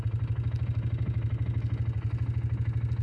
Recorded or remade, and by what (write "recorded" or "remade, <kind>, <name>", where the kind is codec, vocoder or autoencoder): recorded